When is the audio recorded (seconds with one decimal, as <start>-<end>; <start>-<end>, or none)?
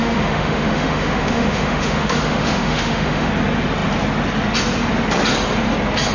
3.3-6.1